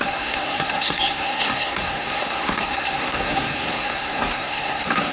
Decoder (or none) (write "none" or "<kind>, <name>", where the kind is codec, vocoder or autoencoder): codec, SNAC